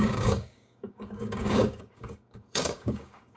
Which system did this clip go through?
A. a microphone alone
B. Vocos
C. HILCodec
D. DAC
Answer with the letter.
D